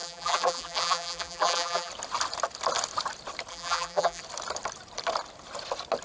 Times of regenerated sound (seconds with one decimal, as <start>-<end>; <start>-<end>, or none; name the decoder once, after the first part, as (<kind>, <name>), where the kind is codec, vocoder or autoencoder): 0.0-1.9 (vocoder, BigVGAN v2); 3.5-4.2